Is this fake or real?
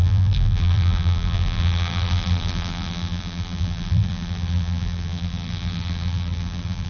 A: fake